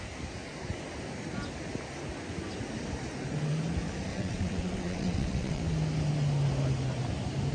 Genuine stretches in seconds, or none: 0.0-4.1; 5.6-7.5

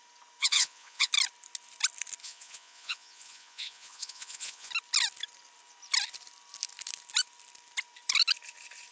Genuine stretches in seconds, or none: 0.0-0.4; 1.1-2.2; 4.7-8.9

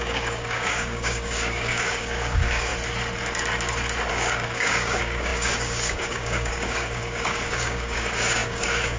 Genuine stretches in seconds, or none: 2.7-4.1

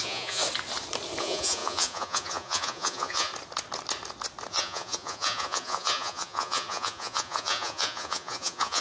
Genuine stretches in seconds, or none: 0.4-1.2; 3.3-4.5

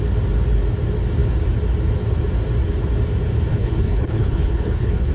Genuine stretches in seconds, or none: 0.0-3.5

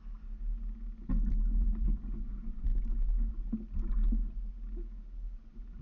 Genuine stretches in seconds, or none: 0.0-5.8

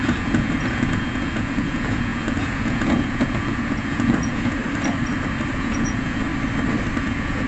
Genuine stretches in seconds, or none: 4.6-5.5; 6.3-7.0